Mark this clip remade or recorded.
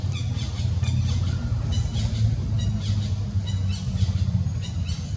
recorded